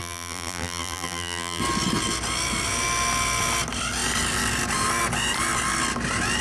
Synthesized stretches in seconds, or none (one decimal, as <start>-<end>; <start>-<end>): 0.0-1.6